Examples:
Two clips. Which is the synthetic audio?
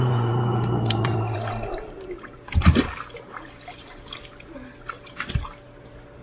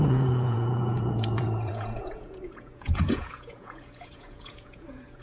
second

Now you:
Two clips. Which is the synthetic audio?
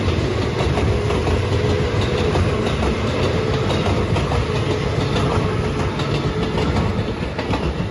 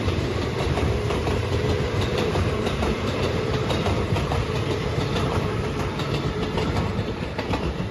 second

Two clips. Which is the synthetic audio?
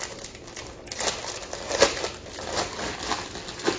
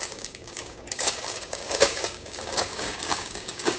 second